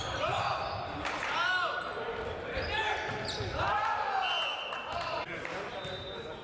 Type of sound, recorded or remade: recorded